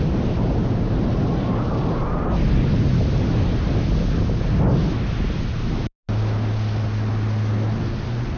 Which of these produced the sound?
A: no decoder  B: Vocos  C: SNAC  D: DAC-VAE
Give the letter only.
A